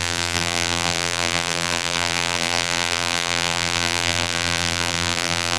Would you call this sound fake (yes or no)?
yes